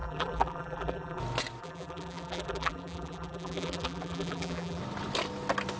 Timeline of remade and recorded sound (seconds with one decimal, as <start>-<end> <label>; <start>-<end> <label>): 0.0-1.2 remade; 1.2-1.6 recorded; 1.6-4.8 remade; 4.8-5.8 recorded